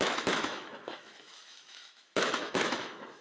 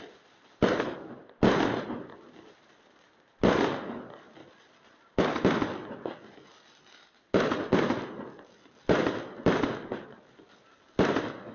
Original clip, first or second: second